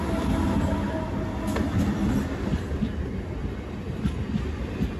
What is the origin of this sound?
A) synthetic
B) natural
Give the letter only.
B